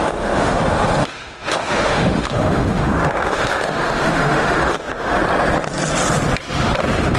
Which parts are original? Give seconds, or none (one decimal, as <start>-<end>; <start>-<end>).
0.6-1.0; 5.2-7.2